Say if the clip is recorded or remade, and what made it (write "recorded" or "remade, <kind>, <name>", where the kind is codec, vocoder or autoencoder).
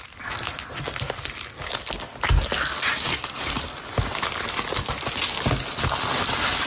recorded